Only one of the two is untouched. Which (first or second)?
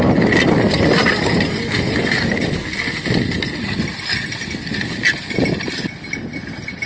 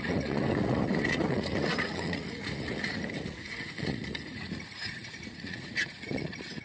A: first